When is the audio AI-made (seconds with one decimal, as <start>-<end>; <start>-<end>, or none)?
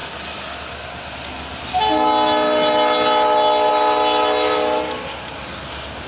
none